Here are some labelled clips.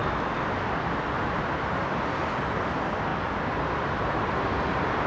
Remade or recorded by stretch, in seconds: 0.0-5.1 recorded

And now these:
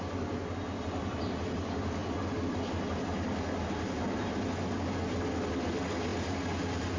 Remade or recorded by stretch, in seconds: 0.0-7.0 recorded

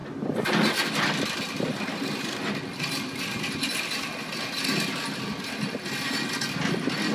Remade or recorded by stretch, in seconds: 0.0-7.1 recorded

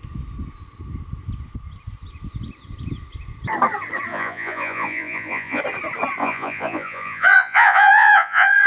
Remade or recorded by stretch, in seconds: 0.0-4.1 recorded; 4.1-5.6 remade; 5.6-6.2 recorded; 6.2-8.7 remade